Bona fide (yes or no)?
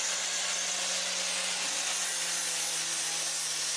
yes